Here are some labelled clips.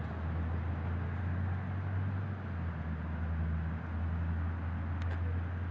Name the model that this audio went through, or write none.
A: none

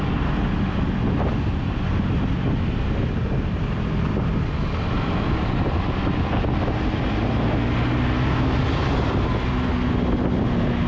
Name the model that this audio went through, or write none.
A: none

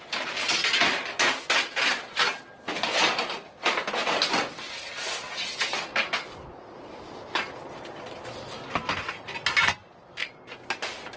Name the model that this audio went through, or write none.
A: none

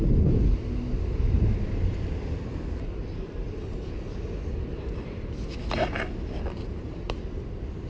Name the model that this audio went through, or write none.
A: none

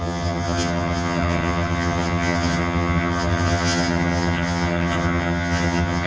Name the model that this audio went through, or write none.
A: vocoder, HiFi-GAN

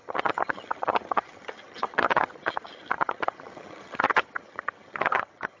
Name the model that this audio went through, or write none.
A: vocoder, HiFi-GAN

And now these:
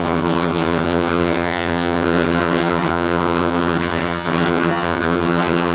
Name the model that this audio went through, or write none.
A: vocoder, HiFi-GAN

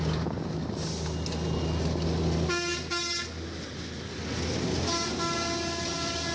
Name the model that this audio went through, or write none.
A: none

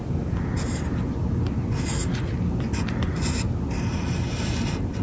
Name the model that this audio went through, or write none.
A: none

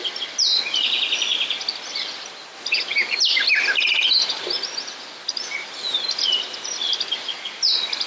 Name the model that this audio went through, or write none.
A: none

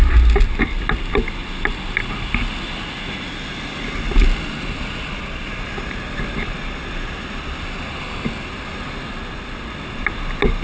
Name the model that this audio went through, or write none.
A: none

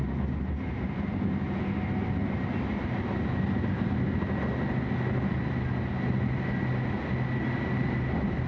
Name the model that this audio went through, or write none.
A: none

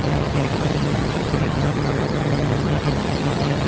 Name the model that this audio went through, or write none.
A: vocoder, HiFi-GAN